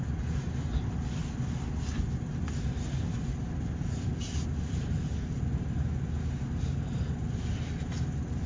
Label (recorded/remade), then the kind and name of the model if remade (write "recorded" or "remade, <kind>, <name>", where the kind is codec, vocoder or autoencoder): recorded